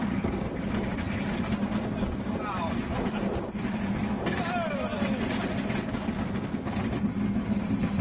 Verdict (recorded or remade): recorded